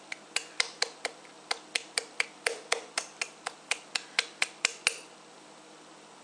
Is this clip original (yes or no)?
yes